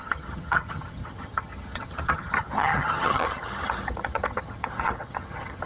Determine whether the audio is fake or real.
fake